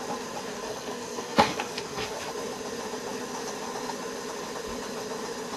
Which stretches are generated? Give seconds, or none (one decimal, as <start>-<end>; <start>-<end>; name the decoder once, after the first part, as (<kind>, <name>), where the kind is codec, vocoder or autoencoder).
0.5-2.3 (codec, SNAC)